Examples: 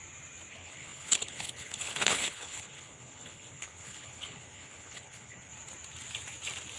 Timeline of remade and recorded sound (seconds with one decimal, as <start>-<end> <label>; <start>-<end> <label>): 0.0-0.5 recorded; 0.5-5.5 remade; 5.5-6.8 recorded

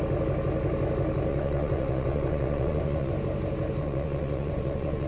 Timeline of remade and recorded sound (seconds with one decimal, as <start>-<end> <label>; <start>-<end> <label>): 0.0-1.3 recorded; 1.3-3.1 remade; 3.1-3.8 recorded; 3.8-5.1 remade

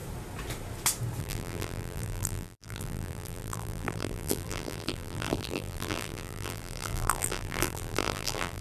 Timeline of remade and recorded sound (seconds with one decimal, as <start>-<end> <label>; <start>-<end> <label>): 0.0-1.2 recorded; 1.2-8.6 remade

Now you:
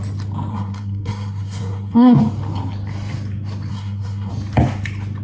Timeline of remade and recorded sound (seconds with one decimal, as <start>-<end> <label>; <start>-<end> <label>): 0.0-0.5 recorded; 0.5-2.2 remade; 2.2-3.7 recorded; 3.7-4.3 remade; 4.3-5.2 recorded